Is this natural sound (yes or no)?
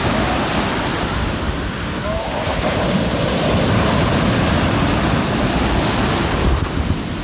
yes